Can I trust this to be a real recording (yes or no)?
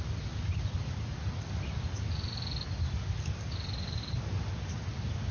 yes